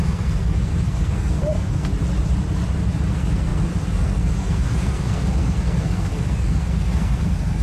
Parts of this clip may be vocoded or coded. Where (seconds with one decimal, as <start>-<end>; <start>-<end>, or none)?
0.0-1.9; 3.1-7.6